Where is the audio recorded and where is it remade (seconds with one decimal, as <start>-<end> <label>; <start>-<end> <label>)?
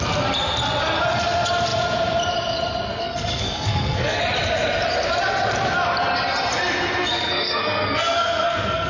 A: 0.0-3.0 recorded; 3.0-4.2 remade; 4.2-7.0 recorded; 7.0-8.9 remade